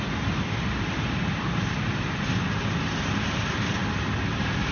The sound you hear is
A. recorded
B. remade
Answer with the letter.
A